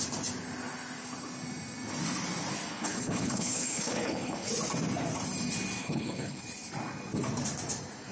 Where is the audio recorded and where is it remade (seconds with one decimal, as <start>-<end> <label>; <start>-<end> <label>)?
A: 0.0-2.7 recorded; 2.7-4.5 remade; 4.5-5.8 recorded; 5.8-6.4 remade; 6.4-8.1 recorded